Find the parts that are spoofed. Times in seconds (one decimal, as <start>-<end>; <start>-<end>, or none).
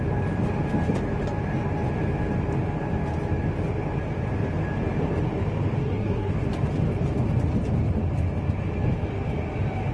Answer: 5.8-6.3